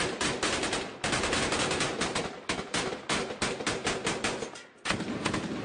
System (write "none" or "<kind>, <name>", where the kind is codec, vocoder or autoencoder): none